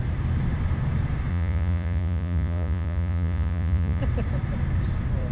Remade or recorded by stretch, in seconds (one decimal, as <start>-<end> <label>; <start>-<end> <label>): 0.0-1.3 recorded; 1.3-4.0 remade; 4.0-5.3 recorded